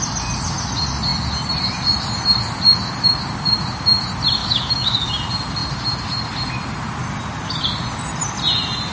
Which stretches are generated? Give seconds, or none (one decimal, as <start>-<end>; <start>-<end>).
4.4-5.1